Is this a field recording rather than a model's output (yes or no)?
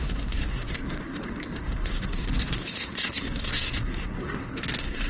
no